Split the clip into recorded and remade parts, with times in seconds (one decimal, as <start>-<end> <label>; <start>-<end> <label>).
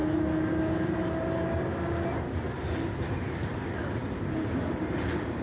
0.0-3.2 recorded; 3.2-4.0 remade; 4.0-4.8 recorded; 4.8-5.4 remade